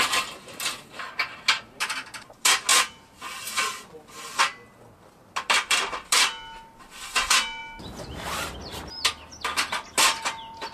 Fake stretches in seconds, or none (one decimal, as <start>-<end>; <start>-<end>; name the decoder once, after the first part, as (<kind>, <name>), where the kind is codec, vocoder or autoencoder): none